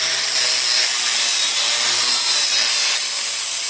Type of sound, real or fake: real